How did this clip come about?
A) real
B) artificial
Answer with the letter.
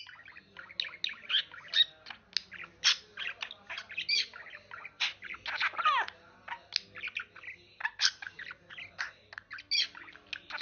A